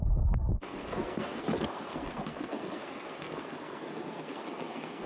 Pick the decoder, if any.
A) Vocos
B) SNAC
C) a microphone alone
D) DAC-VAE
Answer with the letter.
B